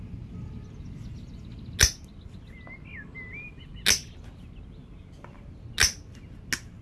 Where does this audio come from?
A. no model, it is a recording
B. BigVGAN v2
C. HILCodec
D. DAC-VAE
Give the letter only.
A